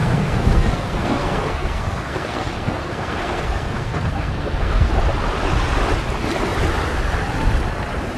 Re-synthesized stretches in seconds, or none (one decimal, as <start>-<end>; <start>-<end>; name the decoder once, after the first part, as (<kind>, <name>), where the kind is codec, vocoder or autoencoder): 0.0-4.9 (codec, SNAC)